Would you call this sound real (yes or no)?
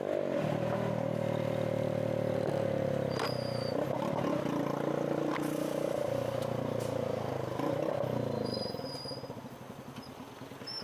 yes